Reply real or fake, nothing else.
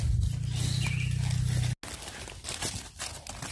real